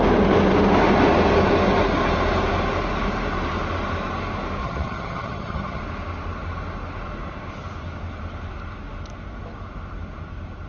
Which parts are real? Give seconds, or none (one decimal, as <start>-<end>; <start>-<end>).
0.0-4.6; 5.8-10.7